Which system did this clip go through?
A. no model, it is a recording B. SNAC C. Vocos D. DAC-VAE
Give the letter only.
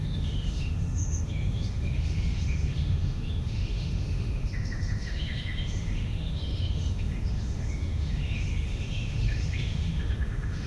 D